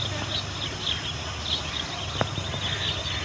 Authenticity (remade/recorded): recorded